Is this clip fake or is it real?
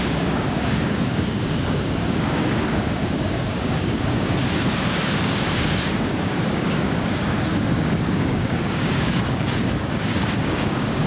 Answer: fake